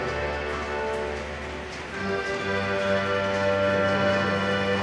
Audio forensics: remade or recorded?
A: recorded